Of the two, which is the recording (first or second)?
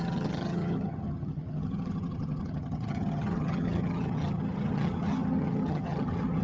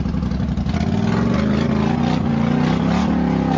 second